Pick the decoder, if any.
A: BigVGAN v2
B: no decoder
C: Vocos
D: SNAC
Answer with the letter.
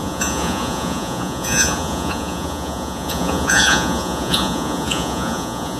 C